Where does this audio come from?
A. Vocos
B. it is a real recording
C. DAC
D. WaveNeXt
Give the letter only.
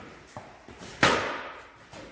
B